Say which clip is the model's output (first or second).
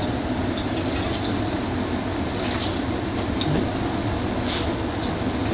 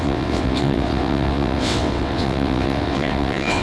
second